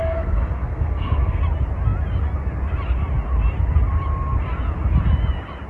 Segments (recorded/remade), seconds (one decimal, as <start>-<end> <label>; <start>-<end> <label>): 0.0-1.4 remade; 1.4-5.7 recorded